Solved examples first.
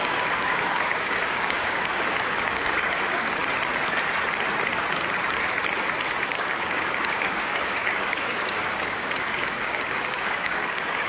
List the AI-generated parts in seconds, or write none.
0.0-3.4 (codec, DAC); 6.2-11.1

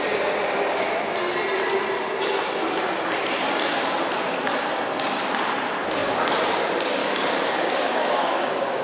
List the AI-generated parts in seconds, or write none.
7.0-8.8 (codec, DAC)

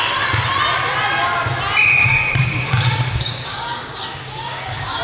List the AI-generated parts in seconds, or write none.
1.9-5.0 (codec, DAC)

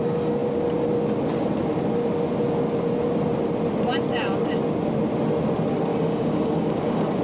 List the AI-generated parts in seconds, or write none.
5.9-7.2 (codec, DAC)

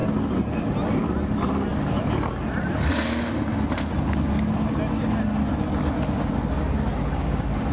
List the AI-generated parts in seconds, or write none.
none